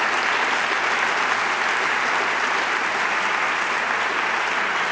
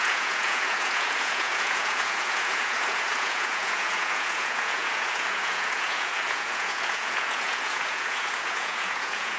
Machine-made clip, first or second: second